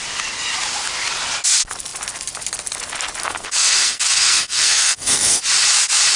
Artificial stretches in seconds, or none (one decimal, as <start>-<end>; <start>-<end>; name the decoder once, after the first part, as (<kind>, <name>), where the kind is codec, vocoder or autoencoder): 3.2-5.4 (codec, SNAC)